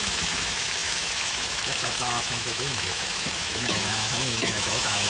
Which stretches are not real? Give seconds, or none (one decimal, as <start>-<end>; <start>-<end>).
0.0-5.1